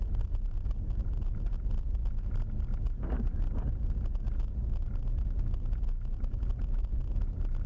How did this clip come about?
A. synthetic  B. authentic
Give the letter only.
B